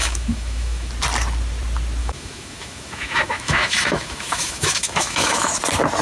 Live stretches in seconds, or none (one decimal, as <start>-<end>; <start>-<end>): 0.9-2.0; 5.6-6.0